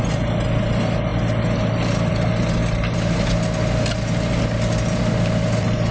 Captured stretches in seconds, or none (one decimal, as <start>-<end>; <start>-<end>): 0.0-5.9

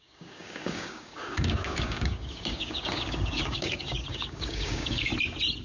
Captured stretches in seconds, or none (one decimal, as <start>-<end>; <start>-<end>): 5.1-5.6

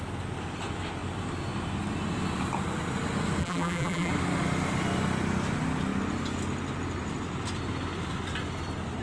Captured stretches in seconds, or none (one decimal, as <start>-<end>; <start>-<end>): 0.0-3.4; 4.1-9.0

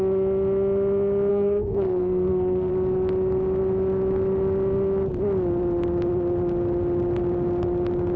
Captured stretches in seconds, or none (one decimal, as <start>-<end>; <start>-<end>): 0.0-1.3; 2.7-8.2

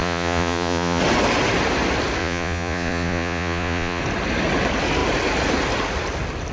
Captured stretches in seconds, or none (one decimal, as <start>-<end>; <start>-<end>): 1.0-2.2; 4.0-6.5

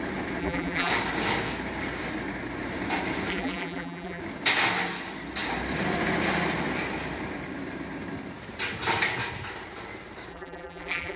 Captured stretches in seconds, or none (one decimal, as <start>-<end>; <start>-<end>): 0.0-0.4; 0.9-3.3; 4.2-10.3

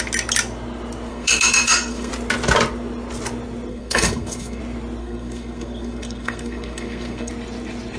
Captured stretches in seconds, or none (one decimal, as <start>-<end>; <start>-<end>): 0.0-1.1; 2.1-3.7; 4.6-5.0; 7.3-8.0